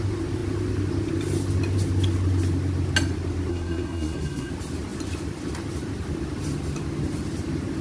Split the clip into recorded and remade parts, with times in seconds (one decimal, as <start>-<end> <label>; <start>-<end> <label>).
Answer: 0.0-3.5 recorded; 3.5-4.5 remade; 4.5-7.8 recorded